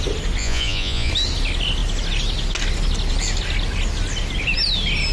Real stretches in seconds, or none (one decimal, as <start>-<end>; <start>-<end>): 0.0-0.4; 1.1-5.1